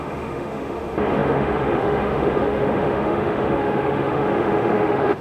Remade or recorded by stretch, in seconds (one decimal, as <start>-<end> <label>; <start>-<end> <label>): 0.0-5.2 remade